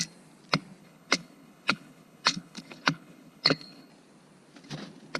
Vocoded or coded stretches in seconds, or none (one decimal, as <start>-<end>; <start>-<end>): 0.8-3.9